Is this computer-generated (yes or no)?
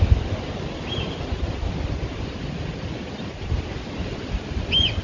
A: no